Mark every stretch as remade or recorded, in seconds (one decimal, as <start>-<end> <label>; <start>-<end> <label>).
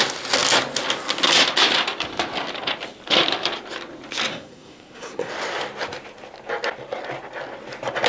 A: 0.0-4.3 recorded; 4.3-5.3 remade; 5.3-8.1 recorded